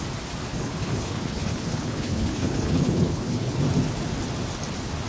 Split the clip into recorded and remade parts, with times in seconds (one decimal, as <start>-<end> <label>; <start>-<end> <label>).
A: 0.0-0.5 recorded; 0.5-3.6 remade; 3.6-5.1 recorded